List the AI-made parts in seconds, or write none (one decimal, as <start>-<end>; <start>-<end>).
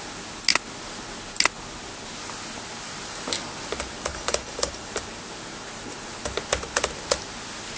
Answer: 4.1-4.9